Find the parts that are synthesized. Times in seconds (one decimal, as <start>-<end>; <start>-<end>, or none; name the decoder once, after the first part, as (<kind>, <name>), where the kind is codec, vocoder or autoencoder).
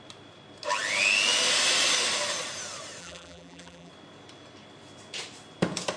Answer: 3.0-3.9 (vocoder, BigVGAN v2)